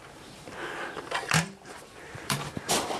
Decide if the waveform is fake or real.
fake